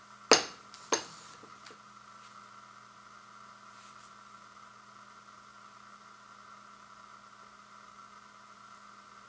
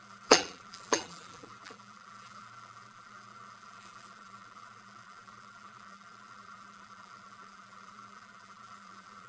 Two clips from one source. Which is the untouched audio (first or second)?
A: first